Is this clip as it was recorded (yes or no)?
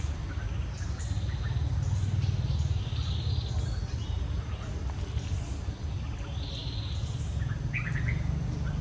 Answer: yes